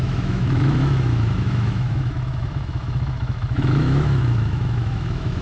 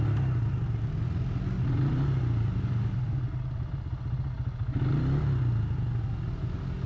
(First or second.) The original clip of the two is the second